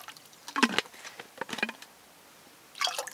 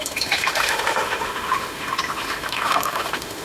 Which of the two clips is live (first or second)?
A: first